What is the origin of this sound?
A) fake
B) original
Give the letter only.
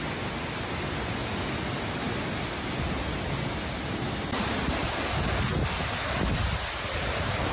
B